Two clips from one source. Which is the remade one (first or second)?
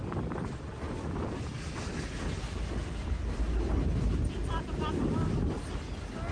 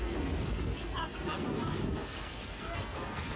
second